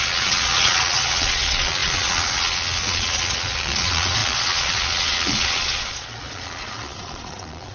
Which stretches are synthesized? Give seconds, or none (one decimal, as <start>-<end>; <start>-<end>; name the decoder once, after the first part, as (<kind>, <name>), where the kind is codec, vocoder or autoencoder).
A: 0.0-7.7 (vocoder, Vocos)